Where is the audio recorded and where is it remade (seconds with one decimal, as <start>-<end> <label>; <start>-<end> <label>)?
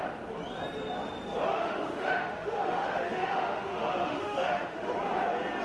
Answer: 0.0-1.5 recorded; 1.5-4.9 remade; 4.9-5.6 recorded